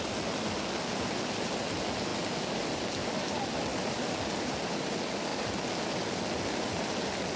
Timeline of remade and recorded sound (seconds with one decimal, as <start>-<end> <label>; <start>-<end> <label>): 0.0-7.4 recorded